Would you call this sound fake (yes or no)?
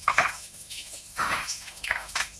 yes